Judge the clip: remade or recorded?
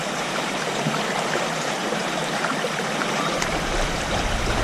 remade